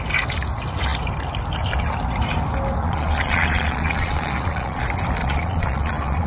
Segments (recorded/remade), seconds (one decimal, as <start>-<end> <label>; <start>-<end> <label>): 0.0-2.8 recorded; 2.8-4.8 remade; 4.8-5.2 recorded; 5.2-6.3 remade